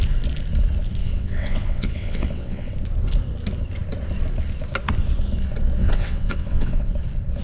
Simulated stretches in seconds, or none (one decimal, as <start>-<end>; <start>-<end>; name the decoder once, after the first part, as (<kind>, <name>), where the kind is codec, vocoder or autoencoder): 1.0-2.7 (vocoder, WaveNeXt); 5.8-6.9